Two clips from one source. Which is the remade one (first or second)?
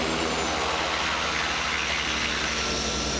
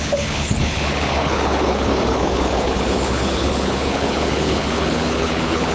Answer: second